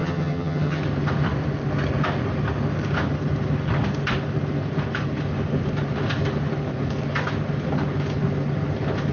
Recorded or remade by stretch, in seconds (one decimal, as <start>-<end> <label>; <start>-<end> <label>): 0.0-0.8 remade; 0.8-9.1 recorded